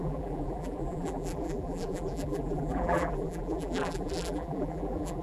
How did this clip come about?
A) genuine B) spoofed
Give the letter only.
B